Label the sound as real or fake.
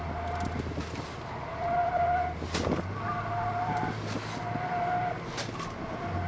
real